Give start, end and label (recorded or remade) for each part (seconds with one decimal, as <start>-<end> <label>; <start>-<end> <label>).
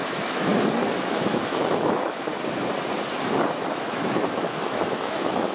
0.0-0.5 remade; 0.5-1.1 recorded; 1.1-2.3 remade; 2.3-3.7 recorded; 3.7-5.5 remade